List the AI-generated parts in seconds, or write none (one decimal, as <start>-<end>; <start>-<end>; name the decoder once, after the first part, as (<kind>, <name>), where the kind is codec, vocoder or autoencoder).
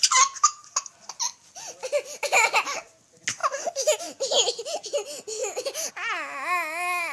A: 3.4-4.0 (autoencoder, DAC-VAE)